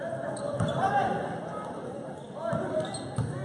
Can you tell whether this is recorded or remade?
recorded